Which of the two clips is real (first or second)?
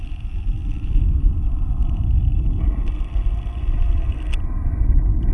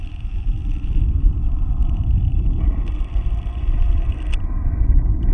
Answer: first